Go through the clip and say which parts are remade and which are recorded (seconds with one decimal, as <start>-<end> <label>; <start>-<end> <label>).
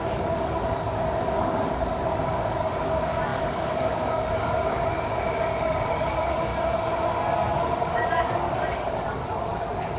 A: 0.0-6.5 remade; 6.5-7.5 recorded; 7.5-10.0 remade